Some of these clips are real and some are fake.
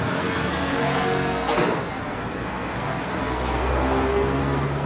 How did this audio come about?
fake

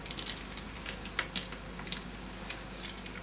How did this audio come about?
real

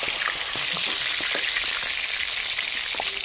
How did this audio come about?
real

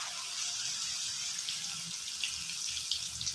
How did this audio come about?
real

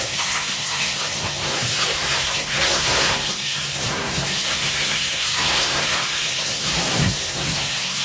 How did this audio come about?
fake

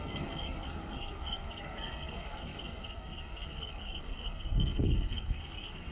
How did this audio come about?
fake